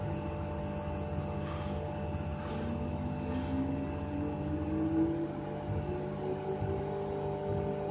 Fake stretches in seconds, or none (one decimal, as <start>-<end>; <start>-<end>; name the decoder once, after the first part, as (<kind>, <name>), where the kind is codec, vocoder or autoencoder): none